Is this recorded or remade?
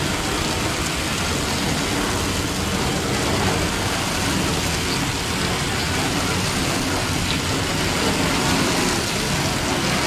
recorded